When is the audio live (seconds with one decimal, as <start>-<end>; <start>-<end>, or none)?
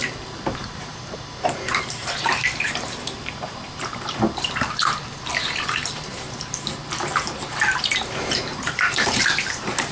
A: 6.8-7.8